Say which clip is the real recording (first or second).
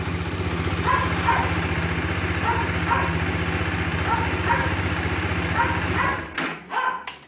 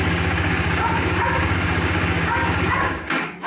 first